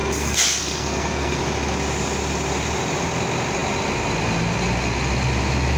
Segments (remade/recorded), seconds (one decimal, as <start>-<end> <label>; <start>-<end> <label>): 0.0-1.4 remade; 1.4-5.8 recorded